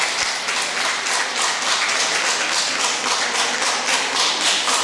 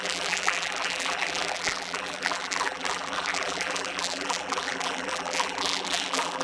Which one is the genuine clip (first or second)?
first